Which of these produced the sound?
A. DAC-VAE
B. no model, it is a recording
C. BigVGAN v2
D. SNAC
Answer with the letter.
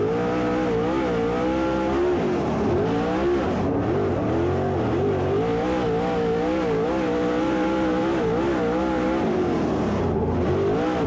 B